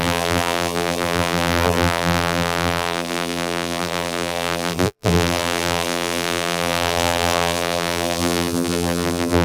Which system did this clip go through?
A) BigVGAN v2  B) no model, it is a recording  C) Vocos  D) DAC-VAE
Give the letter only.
A